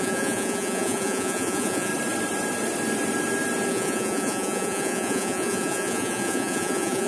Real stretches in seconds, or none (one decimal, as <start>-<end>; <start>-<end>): 1.9-3.7